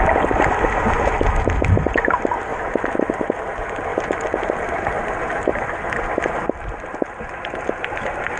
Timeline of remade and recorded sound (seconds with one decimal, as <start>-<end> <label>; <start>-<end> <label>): 0.0-2.5 recorded; 2.5-3.2 remade; 3.2-3.9 recorded; 3.9-4.9 remade; 4.9-8.4 recorded